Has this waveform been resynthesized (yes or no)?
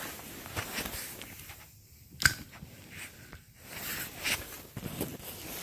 no